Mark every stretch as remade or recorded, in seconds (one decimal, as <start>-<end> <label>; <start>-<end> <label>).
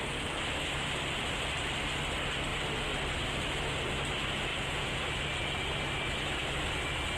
0.0-4.5 recorded; 4.5-5.0 remade; 5.0-7.2 recorded